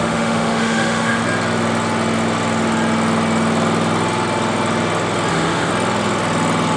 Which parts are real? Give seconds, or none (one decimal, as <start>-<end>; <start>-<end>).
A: 1.2-5.3; 5.7-6.8